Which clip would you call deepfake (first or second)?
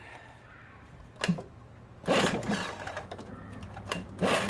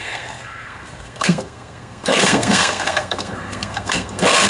second